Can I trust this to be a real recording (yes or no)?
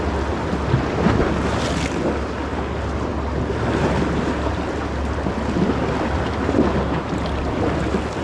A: yes